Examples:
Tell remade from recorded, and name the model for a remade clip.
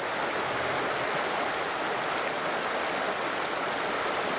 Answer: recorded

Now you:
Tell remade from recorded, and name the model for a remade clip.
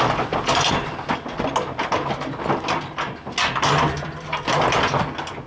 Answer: recorded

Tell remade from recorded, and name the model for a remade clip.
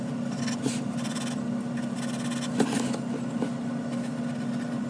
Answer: recorded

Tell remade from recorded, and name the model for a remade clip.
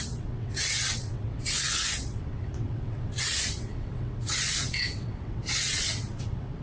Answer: remade, vocoder, WaveNeXt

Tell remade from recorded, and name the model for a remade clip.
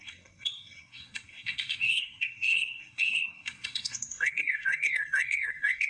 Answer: remade, codec, SNAC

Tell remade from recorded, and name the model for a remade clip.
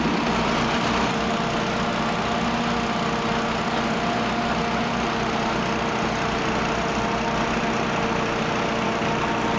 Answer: recorded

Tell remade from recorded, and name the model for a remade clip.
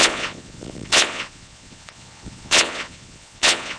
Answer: remade, vocoder, Vocos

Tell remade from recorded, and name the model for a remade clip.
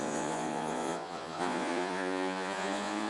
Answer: remade, vocoder, Vocos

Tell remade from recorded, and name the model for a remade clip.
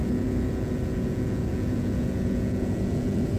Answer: remade, vocoder, Vocos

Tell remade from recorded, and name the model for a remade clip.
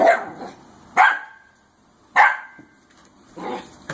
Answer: recorded